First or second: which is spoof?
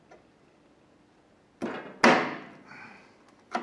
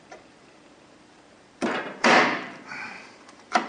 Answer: second